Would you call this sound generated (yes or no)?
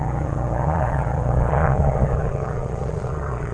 yes